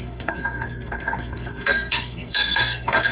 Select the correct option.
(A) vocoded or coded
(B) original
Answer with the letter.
A